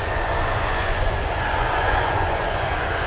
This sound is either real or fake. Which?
fake